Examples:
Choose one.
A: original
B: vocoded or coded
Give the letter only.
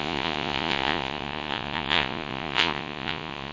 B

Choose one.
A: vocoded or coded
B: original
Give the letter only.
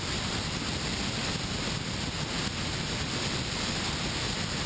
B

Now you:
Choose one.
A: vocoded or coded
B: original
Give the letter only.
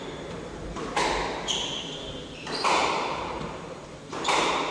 A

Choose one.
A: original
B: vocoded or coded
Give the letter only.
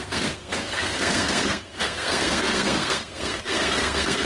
B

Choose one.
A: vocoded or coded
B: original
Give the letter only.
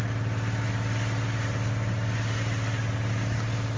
B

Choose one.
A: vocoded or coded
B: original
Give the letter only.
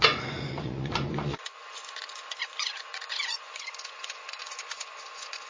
A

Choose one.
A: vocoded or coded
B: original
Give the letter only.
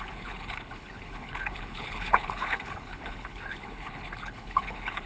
A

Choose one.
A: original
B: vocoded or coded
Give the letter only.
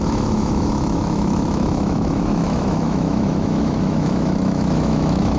B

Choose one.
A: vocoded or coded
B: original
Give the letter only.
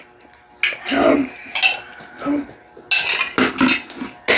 B